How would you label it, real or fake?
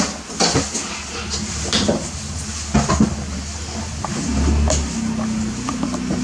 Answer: real